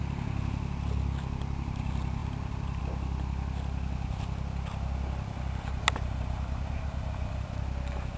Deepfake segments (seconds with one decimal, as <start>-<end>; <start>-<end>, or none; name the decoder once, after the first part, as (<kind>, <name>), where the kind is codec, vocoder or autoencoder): none